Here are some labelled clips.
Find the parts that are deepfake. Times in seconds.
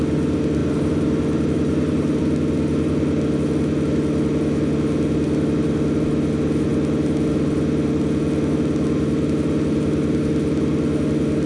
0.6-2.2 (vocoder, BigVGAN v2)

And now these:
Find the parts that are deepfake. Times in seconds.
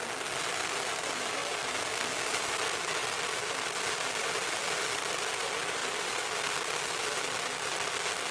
none